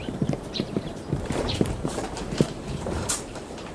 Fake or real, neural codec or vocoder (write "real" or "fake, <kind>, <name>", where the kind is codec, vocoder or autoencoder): fake, vocoder, BigVGAN v2